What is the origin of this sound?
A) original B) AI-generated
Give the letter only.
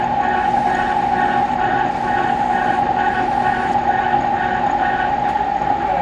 A